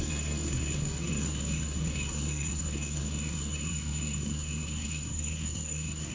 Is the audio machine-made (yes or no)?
yes